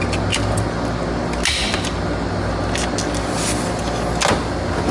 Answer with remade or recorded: recorded